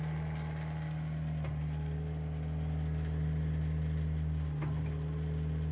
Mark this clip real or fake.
real